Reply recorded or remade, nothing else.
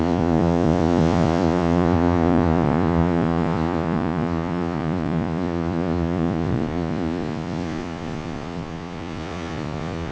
remade